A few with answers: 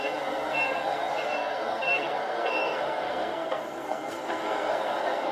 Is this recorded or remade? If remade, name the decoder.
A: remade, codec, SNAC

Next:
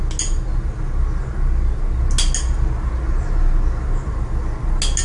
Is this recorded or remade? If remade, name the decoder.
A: recorded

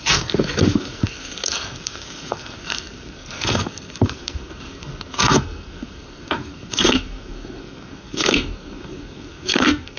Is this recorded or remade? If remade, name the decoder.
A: remade, codec, SNAC